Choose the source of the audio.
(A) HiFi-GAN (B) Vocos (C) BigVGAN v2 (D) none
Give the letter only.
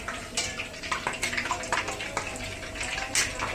D